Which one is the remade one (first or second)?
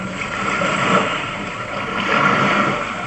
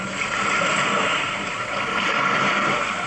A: first